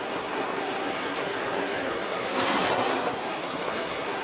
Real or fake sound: fake